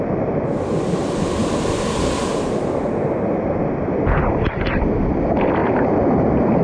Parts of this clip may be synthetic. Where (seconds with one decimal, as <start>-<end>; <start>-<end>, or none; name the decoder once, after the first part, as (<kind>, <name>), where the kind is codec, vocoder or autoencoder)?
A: none